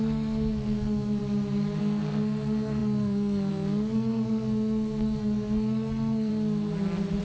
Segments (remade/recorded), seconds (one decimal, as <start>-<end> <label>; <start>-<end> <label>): 0.0-1.2 remade; 1.2-1.8 recorded; 1.8-6.3 remade; 6.3-7.2 recorded